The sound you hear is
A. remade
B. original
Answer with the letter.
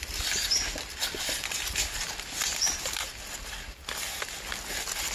B